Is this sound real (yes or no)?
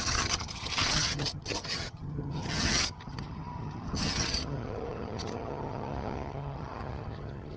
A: no